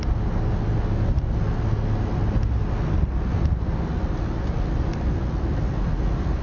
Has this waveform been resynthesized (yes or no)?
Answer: no